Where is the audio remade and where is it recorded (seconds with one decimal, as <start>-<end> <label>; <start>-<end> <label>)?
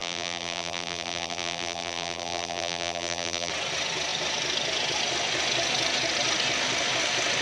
0.0-3.5 remade; 3.5-7.4 recorded